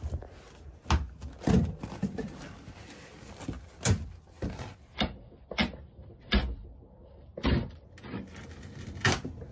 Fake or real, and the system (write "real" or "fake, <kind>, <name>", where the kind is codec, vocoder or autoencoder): real